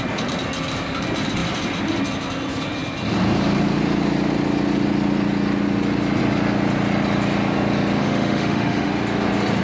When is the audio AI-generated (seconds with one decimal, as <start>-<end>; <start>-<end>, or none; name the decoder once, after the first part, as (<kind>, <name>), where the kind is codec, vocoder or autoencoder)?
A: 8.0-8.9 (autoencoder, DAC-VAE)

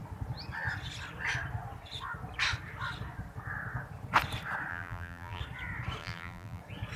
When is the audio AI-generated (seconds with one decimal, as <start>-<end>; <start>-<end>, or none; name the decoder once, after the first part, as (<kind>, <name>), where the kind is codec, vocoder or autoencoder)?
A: 4.7-5.4 (vocoder, BigVGAN v2); 6.0-6.6

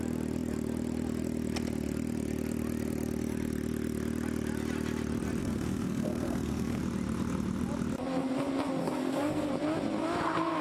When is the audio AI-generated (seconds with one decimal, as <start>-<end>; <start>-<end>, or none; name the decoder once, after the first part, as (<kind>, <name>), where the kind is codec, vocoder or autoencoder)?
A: 5.4-6.8 (codec, SNAC); 8.8-9.5

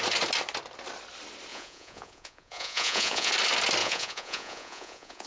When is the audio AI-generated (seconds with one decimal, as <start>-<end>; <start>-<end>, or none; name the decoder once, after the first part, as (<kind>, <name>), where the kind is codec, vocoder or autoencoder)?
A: 1.5-3.3 (vocoder, Vocos); 3.8-5.3

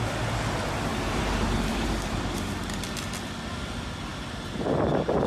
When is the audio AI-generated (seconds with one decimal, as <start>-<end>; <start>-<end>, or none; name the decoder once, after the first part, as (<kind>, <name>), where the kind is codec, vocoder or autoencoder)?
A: 0.9-2.5 (vocoder, BigVGAN v2)